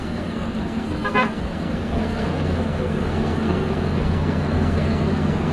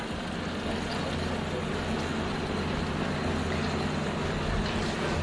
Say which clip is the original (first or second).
second